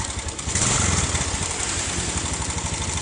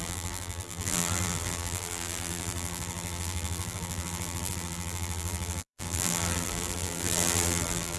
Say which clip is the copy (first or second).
second